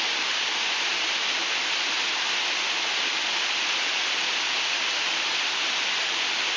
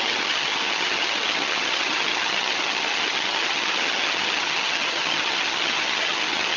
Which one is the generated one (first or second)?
second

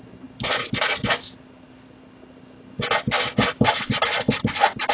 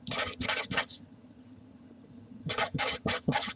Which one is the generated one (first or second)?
second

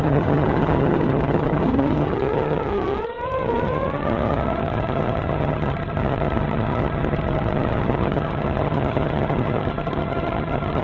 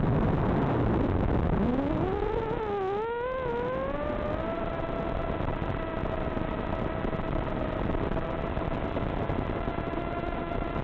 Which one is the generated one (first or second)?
first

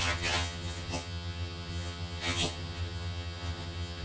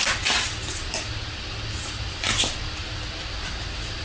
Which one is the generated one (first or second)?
first